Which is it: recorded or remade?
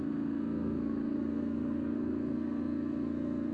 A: remade